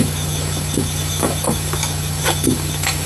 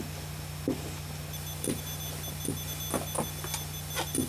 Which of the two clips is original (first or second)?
second